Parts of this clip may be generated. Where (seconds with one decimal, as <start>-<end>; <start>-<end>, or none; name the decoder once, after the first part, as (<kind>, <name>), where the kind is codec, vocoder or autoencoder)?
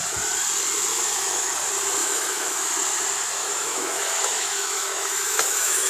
0.9-1.5 (autoencoder, DAC-VAE); 2.0-2.7; 3.4-5.9